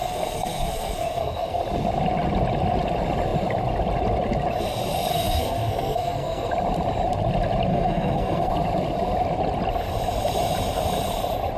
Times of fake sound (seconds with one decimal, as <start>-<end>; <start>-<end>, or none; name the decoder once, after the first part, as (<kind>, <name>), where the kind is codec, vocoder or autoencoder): 0.0-1.6 (codec, SNAC); 5.1-6.5; 7.7-8.5